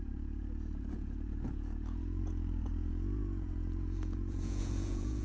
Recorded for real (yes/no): no